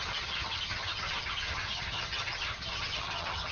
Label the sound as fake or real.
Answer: fake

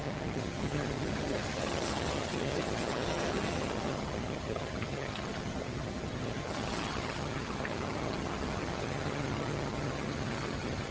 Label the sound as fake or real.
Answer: fake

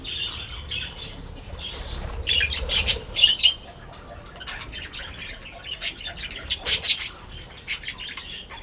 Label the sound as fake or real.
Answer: real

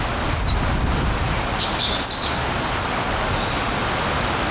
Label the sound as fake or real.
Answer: real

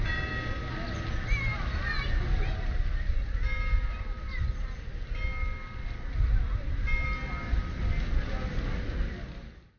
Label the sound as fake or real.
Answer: real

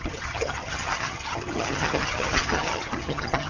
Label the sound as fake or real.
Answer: fake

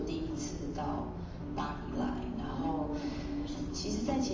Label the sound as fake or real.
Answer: real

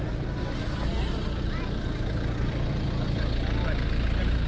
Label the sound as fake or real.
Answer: real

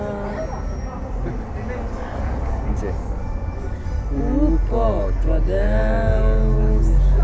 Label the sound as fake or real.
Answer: real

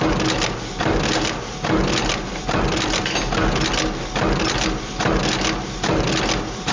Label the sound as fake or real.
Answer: real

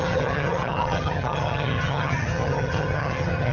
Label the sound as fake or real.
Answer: fake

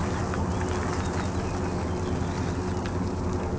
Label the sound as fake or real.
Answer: real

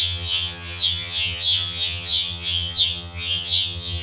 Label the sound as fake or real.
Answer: fake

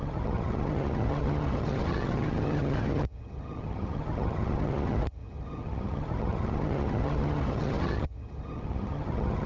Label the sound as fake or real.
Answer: fake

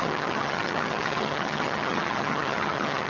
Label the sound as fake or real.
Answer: fake